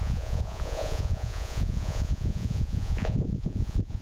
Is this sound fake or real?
fake